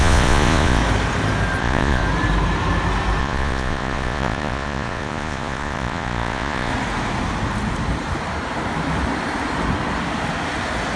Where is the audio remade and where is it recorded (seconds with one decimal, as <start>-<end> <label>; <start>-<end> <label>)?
0.0-0.8 remade; 0.8-1.6 recorded; 1.6-2.0 remade; 2.0-3.2 recorded; 3.2-6.7 remade; 6.7-11.0 recorded